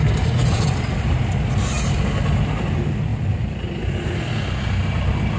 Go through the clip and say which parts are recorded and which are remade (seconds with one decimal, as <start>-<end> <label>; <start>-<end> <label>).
0.0-3.1 recorded; 3.1-4.3 remade; 4.3-5.4 recorded